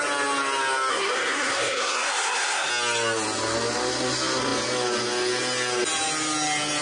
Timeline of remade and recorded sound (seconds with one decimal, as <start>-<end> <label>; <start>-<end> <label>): 0.0-0.9 recorded; 0.9-2.7 remade; 2.7-6.8 recorded